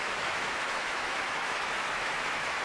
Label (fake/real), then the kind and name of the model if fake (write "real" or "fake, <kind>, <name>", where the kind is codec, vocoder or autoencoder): fake, autoencoder, DAC-VAE